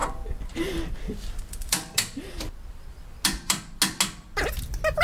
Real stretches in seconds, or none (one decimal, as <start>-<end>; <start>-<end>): 2.3-5.0